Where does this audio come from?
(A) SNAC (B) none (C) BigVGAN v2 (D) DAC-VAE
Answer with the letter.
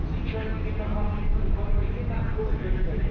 B